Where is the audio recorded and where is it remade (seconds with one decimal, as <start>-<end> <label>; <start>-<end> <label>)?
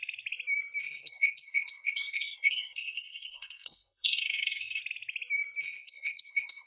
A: 0.0-0.8 recorded; 0.8-4.8 remade; 4.8-5.6 recorded; 5.6-6.7 remade